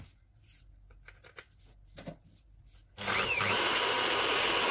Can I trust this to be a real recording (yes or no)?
yes